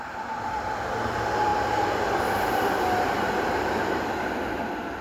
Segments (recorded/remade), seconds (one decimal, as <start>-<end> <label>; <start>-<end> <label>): 0.0-5.0 recorded